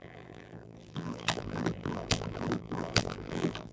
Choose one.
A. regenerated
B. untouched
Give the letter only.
A